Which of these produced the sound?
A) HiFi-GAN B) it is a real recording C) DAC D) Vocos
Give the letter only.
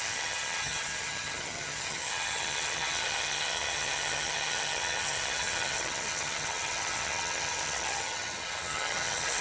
A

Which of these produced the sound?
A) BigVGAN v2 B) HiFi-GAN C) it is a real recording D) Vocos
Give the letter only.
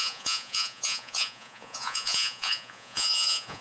D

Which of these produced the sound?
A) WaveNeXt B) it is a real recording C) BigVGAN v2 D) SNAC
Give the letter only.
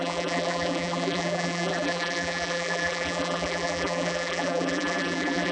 C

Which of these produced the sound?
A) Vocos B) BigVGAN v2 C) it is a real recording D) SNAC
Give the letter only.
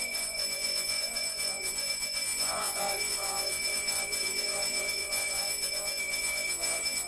A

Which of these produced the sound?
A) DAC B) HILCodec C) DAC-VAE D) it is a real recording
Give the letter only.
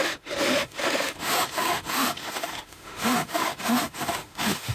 C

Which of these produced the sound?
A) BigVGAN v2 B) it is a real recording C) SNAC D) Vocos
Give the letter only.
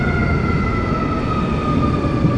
A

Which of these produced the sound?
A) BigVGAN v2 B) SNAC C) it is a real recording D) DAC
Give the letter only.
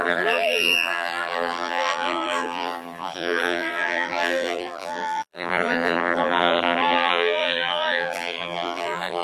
A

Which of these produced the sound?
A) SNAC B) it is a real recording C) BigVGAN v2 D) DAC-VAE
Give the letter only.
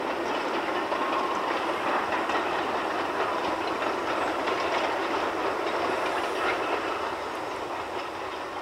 B